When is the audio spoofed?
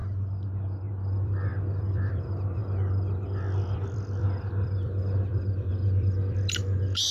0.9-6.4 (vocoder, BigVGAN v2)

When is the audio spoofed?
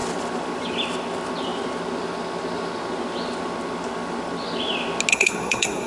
5.1-5.9 (codec, SNAC)